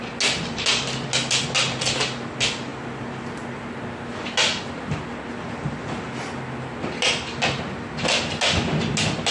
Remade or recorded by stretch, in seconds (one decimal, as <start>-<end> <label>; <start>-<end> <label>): 0.0-9.3 recorded